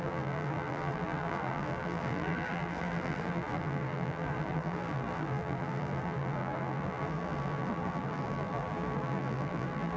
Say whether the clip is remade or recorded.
remade